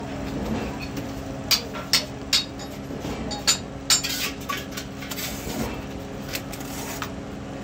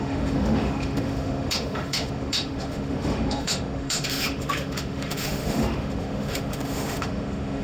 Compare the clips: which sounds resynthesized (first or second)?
second